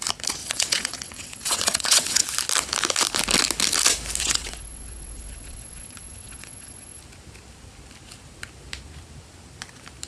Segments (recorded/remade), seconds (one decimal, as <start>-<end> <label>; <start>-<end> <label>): 0.0-0.4 recorded; 0.4-2.2 remade; 2.2-4.2 recorded; 4.2-7.0 remade; 7.0-10.1 recorded